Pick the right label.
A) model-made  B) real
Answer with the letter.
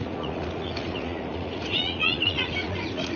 A